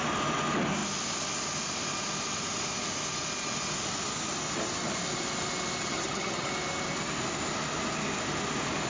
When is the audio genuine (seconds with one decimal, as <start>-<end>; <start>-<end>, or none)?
0.0-5.8; 6.5-8.9